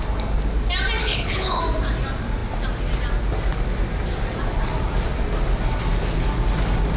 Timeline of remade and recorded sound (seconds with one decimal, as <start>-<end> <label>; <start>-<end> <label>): 0.0-1.0 recorded; 1.0-1.6 remade; 1.6-7.0 recorded